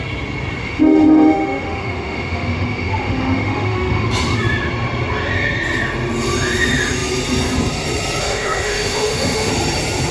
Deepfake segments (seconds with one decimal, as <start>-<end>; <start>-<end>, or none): 0.6-4.1; 8.2-9.5